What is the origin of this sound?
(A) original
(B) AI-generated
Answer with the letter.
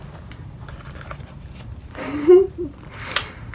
A